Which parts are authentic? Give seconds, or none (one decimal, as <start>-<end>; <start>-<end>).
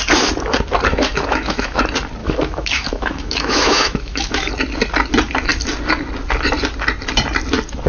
0.0-0.9; 1.8-2.2; 4.5-7.9